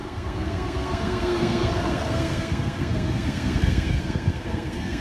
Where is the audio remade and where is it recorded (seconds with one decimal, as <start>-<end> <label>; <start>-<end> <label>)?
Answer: 0.0-5.0 remade